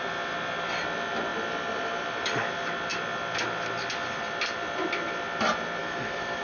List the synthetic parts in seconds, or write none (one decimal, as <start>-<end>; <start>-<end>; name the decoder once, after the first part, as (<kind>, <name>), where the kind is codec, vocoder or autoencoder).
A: 5.8-6.4 (autoencoder, DAC-VAE)

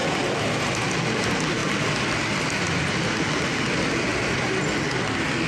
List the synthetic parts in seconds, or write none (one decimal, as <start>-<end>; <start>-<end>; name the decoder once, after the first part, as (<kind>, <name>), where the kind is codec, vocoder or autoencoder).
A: none

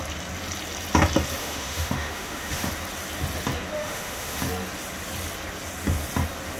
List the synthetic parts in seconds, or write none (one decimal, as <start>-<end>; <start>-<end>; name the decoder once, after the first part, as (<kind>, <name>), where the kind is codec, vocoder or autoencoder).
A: 1.4-2.7 (autoencoder, DAC-VAE); 3.8-4.4

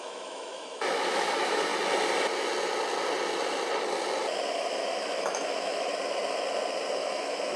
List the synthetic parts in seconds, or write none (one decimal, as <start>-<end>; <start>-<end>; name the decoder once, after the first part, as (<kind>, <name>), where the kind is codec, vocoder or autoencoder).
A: 0.0-1.7 (autoencoder, DAC-VAE); 4.5-5.9; 6.9-7.6

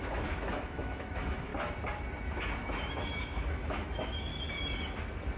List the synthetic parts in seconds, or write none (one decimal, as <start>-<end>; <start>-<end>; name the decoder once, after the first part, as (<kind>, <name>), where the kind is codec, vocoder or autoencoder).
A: 0.0-1.5 (autoencoder, DAC-VAE); 2.6-4.3

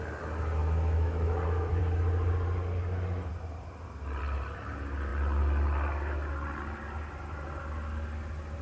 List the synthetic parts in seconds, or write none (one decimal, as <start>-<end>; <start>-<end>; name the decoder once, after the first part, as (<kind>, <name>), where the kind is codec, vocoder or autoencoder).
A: 0.6-1.4 (autoencoder, DAC-VAE)

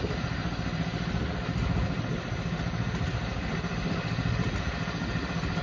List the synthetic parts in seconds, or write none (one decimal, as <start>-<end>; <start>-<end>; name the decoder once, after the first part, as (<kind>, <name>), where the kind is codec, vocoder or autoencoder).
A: none